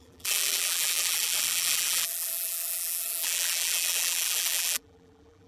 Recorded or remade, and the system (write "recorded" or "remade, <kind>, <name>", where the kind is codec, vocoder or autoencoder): remade, vocoder, BigVGAN v2